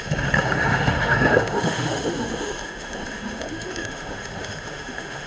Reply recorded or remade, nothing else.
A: remade